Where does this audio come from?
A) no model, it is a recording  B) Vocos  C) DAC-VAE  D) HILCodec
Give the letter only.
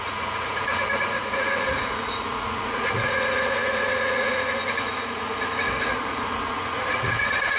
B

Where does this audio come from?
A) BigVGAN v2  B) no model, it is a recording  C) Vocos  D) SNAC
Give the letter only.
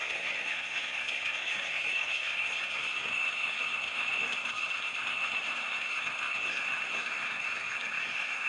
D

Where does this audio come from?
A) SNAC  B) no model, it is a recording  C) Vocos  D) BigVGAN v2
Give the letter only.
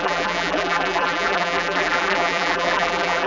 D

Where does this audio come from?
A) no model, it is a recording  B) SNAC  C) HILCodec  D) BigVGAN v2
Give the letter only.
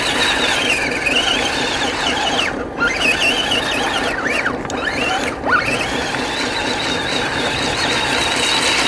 A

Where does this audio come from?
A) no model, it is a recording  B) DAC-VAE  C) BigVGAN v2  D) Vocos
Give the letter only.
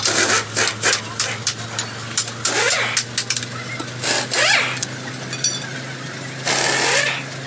A